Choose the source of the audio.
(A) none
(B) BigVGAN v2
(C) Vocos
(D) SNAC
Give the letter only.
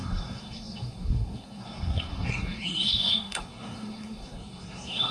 D